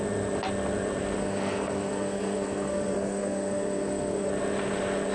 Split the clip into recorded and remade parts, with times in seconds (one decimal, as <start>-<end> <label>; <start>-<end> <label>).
0.0-1.2 recorded; 1.2-4.3 remade; 4.3-5.1 recorded